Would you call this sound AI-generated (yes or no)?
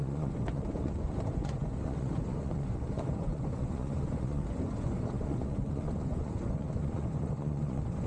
yes